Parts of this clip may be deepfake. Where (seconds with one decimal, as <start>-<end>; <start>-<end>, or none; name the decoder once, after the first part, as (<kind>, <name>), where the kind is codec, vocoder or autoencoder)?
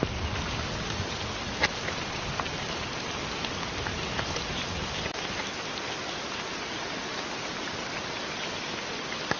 none